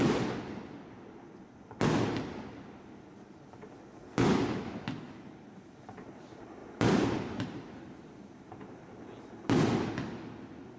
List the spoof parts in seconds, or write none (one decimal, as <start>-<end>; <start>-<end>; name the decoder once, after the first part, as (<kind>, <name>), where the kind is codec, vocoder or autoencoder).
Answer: 6.6-8.9 (vocoder, BigVGAN v2)